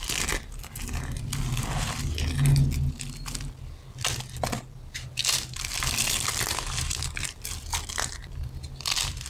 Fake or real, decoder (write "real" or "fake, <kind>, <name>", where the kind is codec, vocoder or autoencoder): real